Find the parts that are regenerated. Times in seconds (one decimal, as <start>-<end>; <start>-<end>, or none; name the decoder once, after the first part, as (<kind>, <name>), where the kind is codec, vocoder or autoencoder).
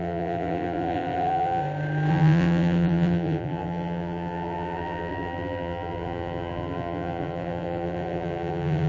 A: 0.0-1.6 (vocoder, BigVGAN v2); 2.1-8.9